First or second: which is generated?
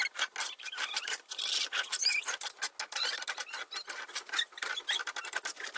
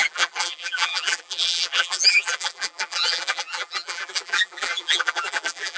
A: second